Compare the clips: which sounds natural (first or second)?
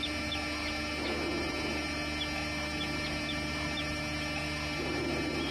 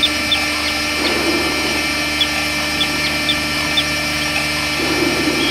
first